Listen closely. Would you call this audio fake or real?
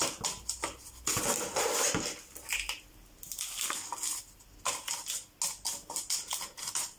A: real